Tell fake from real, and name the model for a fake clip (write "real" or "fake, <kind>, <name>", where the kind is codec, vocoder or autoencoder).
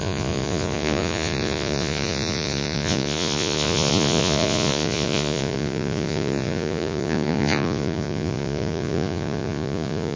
fake, vocoder, Vocos